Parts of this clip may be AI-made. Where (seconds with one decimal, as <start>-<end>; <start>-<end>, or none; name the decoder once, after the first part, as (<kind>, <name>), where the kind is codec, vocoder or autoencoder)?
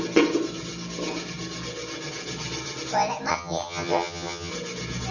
3.3-4.5 (vocoder, HiFi-GAN)